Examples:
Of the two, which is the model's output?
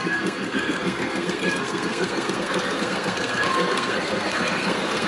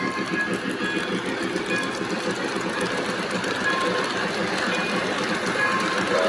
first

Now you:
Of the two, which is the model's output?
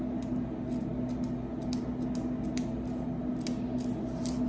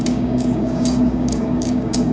second